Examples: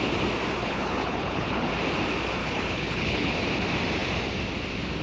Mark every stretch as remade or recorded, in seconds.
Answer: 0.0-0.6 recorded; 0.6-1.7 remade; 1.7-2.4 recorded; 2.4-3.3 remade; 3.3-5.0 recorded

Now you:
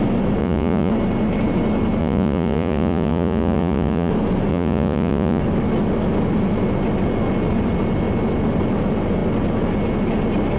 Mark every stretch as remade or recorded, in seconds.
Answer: 0.0-0.4 recorded; 0.4-0.9 remade; 0.9-2.0 recorded; 2.0-4.1 remade; 4.1-4.5 recorded; 4.5-5.4 remade; 5.4-10.6 recorded

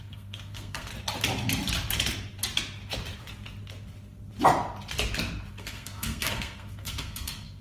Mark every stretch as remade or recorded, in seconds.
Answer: 0.0-0.9 remade; 0.9-5.5 recorded; 5.5-7.6 remade

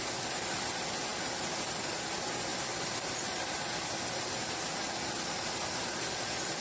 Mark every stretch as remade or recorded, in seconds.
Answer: 0.0-6.6 recorded